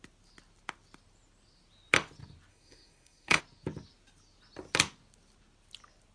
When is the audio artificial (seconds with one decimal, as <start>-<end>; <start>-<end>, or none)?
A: 2.5-3.4